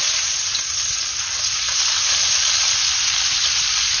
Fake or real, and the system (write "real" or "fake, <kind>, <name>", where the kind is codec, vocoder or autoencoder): real